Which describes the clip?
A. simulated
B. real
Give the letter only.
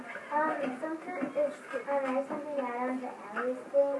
B